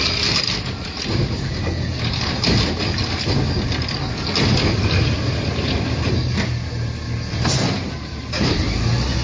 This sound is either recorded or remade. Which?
recorded